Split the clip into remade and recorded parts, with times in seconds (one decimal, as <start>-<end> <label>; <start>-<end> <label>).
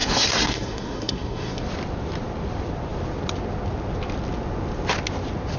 0.0-1.6 remade; 1.6-5.6 recorded